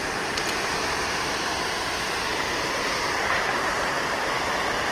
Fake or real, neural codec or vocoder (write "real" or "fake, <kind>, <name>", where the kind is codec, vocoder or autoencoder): real